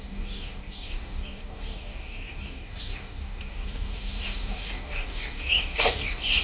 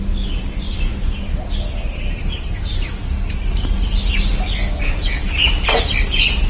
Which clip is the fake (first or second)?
first